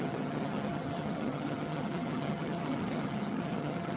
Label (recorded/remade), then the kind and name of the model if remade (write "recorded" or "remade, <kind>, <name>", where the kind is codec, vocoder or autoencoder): remade, vocoder, HiFi-GAN